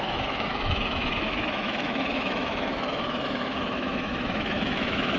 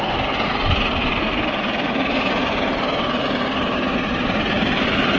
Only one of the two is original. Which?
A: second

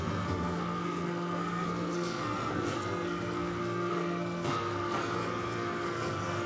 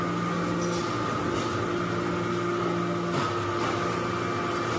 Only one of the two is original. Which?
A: second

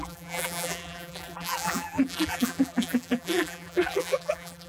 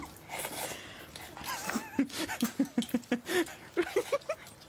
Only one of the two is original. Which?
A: second